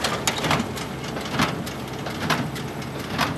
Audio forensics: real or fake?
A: real